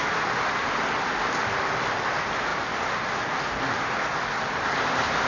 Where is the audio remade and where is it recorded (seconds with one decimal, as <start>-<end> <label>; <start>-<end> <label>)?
0.0-5.3 recorded